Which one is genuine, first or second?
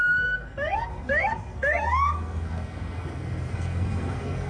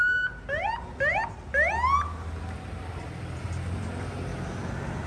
second